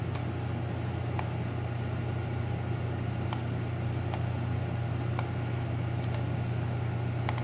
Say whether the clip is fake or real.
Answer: real